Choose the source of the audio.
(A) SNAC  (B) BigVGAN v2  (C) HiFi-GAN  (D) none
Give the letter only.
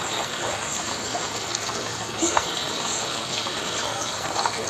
A